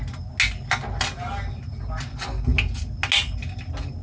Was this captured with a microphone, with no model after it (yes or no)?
yes